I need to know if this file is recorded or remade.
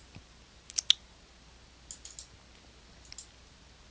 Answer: recorded